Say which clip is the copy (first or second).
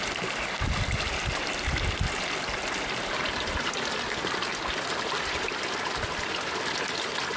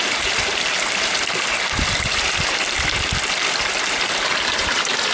second